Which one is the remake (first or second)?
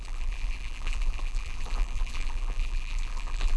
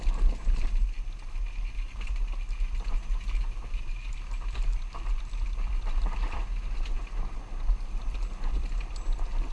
first